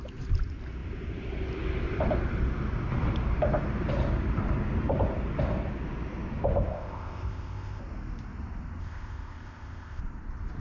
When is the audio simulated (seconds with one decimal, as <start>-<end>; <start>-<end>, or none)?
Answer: 6.7-7.8; 8.8-10.0